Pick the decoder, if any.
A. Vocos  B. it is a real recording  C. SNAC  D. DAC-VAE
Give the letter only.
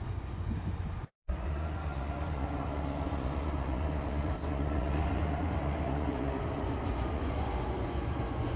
A